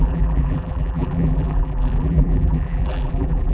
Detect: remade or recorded remade